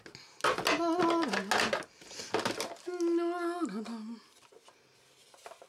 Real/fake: real